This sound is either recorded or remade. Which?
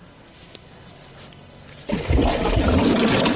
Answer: recorded